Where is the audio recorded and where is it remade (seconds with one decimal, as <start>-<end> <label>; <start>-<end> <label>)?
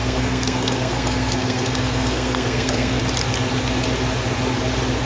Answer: 0.0-3.0 remade; 3.0-5.1 recorded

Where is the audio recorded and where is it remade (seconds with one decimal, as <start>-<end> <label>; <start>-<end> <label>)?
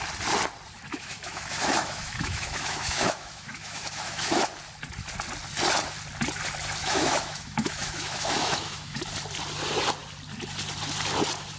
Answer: 0.0-0.9 recorded; 0.9-4.5 remade; 4.5-6.8 recorded; 6.8-9.0 remade; 9.0-11.6 recorded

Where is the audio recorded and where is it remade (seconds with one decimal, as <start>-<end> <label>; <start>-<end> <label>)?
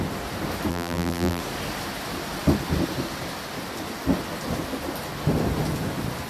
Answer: 0.0-0.7 recorded; 0.7-1.4 remade; 1.4-6.3 recorded